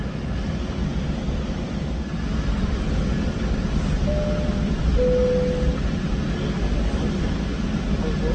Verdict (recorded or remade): recorded